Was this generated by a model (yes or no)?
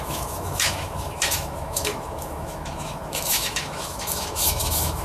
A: yes